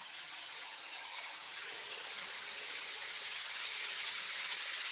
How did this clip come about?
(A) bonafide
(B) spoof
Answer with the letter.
B